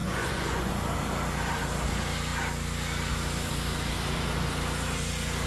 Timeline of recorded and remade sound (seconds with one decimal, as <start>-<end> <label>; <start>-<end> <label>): 0.0-0.7 remade; 0.7-5.5 recorded